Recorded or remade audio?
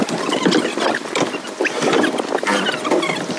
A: recorded